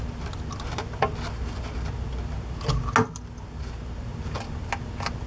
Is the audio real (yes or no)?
yes